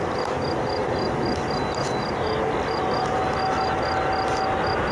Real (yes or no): yes